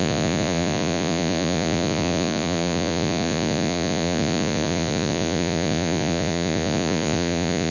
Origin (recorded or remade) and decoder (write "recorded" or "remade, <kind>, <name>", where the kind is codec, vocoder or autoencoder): remade, vocoder, Vocos